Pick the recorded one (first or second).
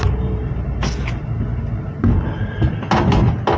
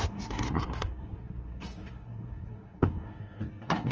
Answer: first